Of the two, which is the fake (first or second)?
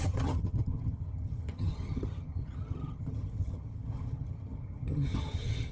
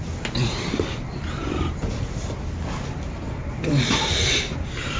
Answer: first